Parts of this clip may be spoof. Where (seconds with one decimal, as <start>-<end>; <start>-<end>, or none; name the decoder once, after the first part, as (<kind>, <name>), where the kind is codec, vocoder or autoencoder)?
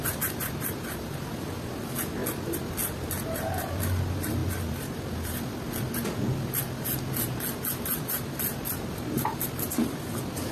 none